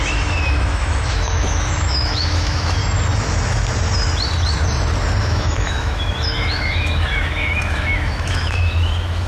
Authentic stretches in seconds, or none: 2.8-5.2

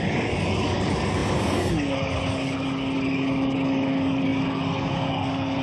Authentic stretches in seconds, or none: none